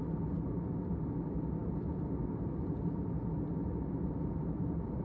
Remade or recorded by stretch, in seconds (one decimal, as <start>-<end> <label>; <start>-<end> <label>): 0.0-5.0 recorded